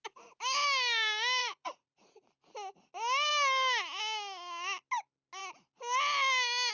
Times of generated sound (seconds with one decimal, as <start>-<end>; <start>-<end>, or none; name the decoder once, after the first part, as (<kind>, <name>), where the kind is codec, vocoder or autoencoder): 1.4-2.3 (vocoder, Vocos)